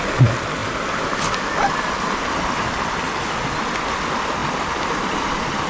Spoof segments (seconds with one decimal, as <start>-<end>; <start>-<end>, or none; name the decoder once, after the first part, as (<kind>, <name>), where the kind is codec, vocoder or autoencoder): 0.0-0.6 (vocoder, BigVGAN v2); 4.0-4.4; 4.9-5.7